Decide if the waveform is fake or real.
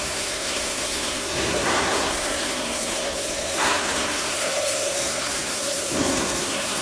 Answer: fake